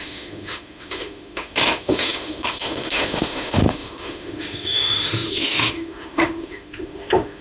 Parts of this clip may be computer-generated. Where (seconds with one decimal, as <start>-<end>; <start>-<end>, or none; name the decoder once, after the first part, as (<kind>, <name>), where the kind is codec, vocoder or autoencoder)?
0.0-7.4 (autoencoder, DAC-VAE)